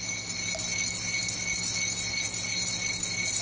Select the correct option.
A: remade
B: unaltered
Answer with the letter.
B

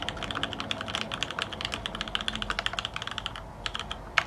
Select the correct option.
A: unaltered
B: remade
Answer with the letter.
A